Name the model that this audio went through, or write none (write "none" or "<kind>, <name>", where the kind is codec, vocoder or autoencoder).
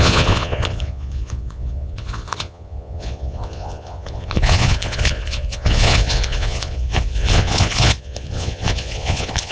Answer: vocoder, Vocos